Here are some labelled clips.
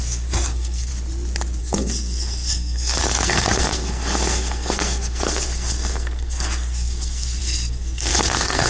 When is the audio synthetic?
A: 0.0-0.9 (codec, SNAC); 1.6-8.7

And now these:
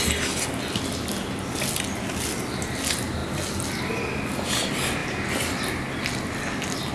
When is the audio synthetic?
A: none

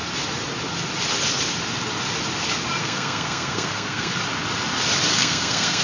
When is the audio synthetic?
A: 2.8-4.1 (codec, SNAC); 5.1-5.8

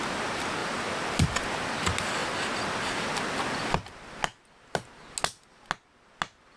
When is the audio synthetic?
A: none

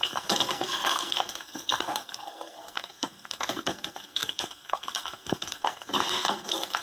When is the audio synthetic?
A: 0.0-6.8 (codec, SNAC)

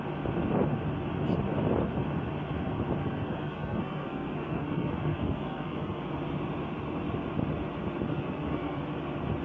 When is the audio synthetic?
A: 3.0-6.1 (codec, SNAC); 8.1-8.8

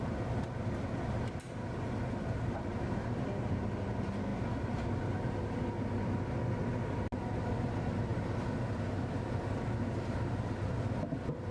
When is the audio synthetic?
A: none